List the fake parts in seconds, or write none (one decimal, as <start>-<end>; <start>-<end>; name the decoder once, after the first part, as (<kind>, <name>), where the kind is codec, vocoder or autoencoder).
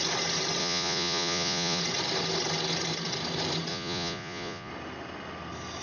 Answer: 0.6-1.8 (vocoder, Vocos); 3.7-4.7